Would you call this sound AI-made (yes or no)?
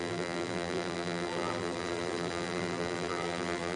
yes